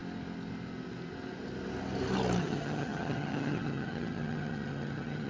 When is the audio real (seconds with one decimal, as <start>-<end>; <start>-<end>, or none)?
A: 0.0-2.4

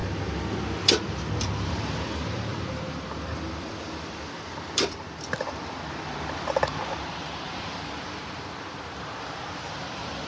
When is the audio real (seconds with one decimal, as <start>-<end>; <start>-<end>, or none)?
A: 0.0-0.9

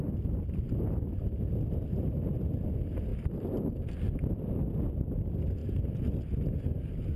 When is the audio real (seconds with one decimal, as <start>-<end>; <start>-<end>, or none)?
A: 0.0-7.2

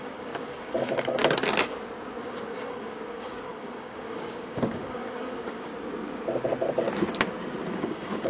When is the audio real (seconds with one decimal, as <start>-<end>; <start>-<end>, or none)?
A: 1.2-2.2; 5.7-7.7

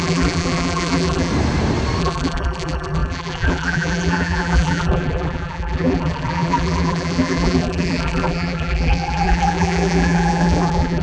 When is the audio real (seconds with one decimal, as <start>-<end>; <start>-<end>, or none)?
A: 1.3-2.0